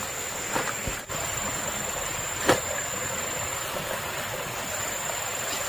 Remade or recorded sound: recorded